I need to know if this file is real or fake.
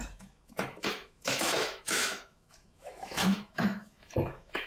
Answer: fake